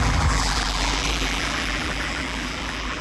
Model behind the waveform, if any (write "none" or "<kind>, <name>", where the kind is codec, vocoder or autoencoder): vocoder, BigVGAN v2